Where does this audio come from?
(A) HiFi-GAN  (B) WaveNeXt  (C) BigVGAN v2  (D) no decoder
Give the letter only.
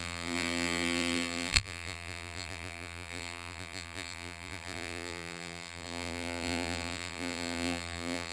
C